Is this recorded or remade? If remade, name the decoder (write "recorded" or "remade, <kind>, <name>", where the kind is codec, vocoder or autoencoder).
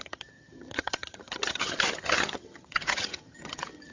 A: remade, vocoder, HiFi-GAN